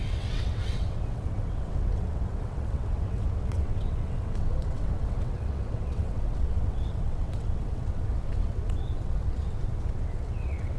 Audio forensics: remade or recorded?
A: remade